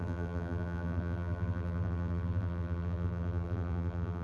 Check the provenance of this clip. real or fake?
fake